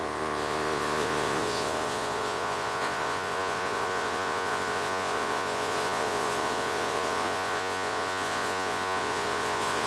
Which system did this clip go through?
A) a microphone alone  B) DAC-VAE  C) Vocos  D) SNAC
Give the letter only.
C